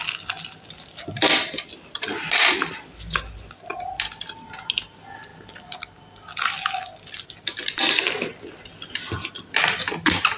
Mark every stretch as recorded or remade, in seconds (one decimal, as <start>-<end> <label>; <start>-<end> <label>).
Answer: 0.0-10.4 recorded